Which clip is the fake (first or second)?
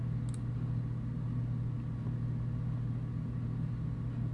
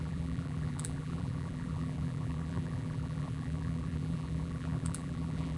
second